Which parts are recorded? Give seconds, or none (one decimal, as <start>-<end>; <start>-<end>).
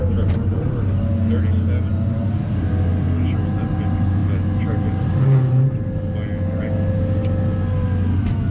0.8-1.9; 2.7-8.5